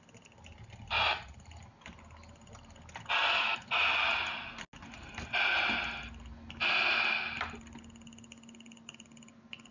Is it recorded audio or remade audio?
recorded